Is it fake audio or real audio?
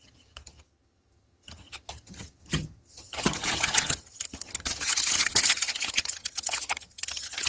fake